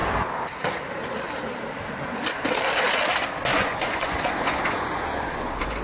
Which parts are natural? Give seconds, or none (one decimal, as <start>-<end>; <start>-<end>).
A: 0.0-3.5